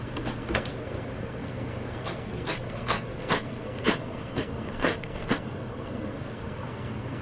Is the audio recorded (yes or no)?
no